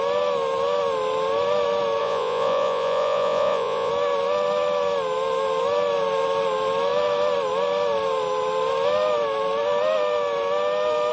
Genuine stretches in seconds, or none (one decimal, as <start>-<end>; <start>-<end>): 0.0-2.0; 3.9-11.1